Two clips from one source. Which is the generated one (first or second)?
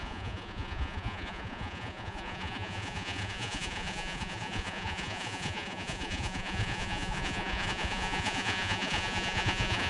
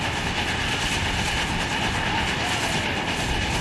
first